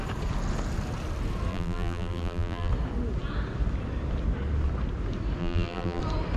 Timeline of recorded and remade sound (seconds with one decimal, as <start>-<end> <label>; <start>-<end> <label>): 0.0-1.5 recorded; 1.5-2.7 remade; 2.7-5.4 recorded; 5.4-6.0 remade; 6.0-6.4 recorded